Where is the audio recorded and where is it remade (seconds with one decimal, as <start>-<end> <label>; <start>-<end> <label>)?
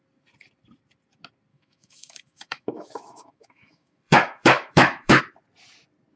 0.0-1.5 recorded; 1.5-5.2 remade; 5.2-6.2 recorded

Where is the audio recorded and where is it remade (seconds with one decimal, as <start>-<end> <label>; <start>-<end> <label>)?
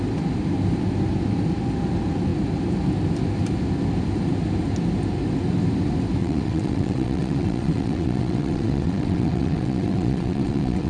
0.0-6.2 recorded; 6.2-10.9 remade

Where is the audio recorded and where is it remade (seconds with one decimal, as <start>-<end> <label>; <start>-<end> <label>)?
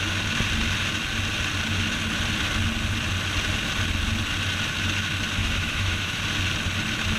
0.0-5.4 recorded; 5.4-6.2 remade; 6.2-7.2 recorded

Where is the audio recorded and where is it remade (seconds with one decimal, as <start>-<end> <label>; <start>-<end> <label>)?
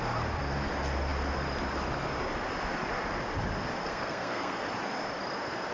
0.0-3.8 recorded; 3.8-4.6 remade; 4.6-5.7 recorded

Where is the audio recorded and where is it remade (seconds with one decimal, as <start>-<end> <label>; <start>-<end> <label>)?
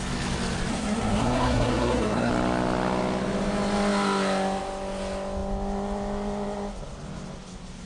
0.0-0.7 recorded; 0.7-2.3 remade; 2.3-7.9 recorded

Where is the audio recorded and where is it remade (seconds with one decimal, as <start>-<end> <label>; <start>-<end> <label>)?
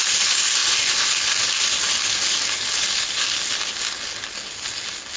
0.0-5.2 recorded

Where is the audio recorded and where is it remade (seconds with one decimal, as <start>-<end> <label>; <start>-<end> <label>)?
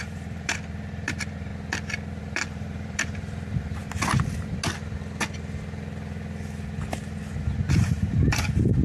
0.0-1.5 remade; 1.5-2.2 recorded; 2.2-3.8 remade; 3.8-7.8 recorded; 7.8-8.8 remade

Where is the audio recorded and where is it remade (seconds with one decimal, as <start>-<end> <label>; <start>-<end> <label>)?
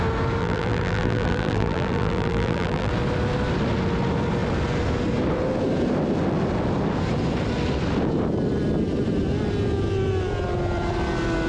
0.0-0.4 recorded; 0.4-2.9 remade; 2.9-11.5 recorded